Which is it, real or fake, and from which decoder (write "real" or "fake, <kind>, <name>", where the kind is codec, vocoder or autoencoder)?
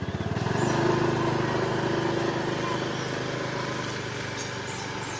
real